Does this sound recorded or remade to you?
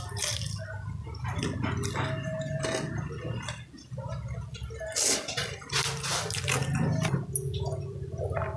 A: recorded